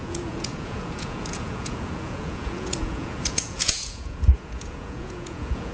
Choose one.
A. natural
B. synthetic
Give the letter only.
B